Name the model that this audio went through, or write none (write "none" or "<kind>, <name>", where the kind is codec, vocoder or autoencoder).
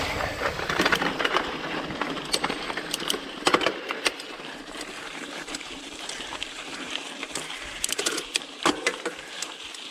vocoder, BigVGAN v2